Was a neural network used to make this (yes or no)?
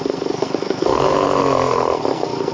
yes